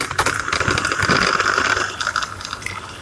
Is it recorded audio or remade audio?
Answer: recorded